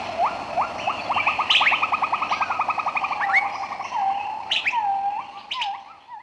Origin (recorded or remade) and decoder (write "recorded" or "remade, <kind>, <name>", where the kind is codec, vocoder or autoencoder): recorded